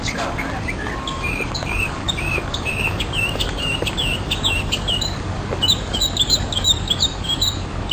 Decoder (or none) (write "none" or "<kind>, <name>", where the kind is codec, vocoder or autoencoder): codec, DAC